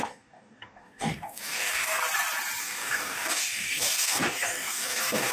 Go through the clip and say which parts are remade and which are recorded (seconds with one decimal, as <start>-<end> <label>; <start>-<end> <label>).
0.0-2.0 remade; 2.0-2.6 recorded; 2.6-5.3 remade